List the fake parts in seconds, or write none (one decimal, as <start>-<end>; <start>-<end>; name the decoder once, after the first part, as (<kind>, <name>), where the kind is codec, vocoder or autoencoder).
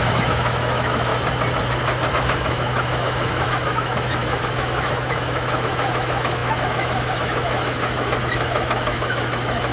0.0-1.1 (autoencoder, DAC-VAE); 2.1-9.7